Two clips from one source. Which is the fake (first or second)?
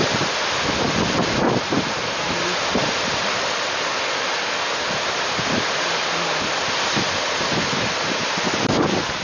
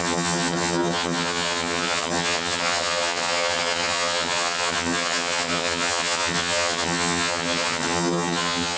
second